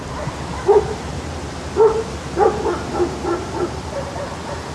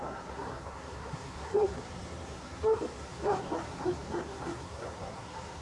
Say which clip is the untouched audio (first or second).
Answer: first